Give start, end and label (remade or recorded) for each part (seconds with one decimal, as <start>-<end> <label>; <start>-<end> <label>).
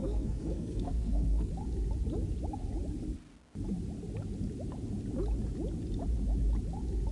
0.0-1.5 remade; 1.5-7.1 recorded